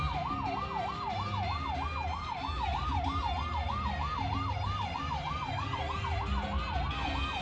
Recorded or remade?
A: recorded